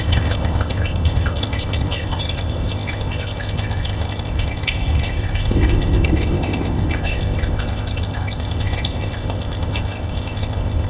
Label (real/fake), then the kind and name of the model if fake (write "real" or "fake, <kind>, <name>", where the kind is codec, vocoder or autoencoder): fake, codec, ZipCodec